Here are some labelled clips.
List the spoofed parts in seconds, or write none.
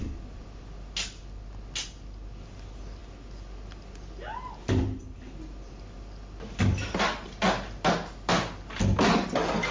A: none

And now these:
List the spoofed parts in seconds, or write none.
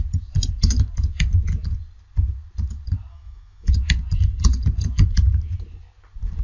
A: 3.1-3.7 (autoencoder, DAC-VAE)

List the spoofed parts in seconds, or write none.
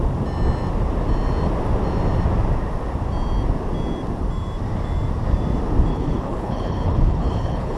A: 5.9-7.8 (codec, HILCodec)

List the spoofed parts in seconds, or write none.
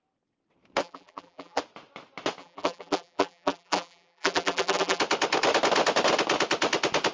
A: 0.8-1.6 (vocoder, BigVGAN v2); 2.4-5.0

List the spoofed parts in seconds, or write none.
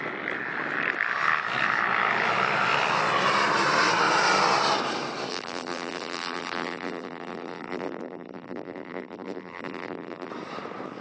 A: 5.3-10.3 (vocoder, BigVGAN v2)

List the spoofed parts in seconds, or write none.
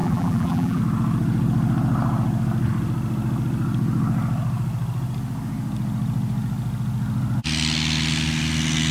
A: 0.0-0.8 (vocoder, BigVGAN v2)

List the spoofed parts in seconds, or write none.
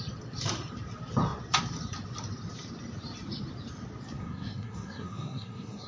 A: 4.2-5.9 (codec, SNAC)